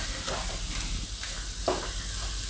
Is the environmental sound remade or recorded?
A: recorded